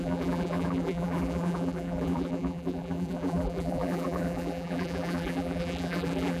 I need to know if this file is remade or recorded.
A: remade